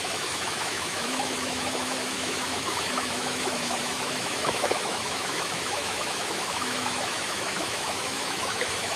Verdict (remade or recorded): remade